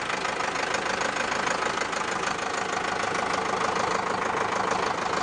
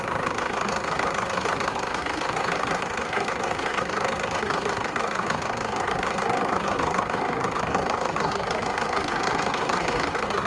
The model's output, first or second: second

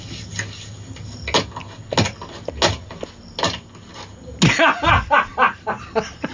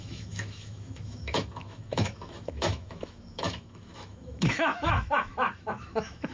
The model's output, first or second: second